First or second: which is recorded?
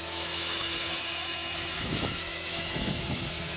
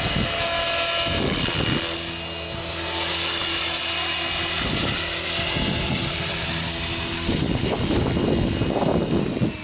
second